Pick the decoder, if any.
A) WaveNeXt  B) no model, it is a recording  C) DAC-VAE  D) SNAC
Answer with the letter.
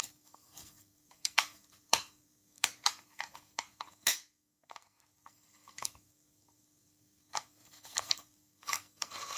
D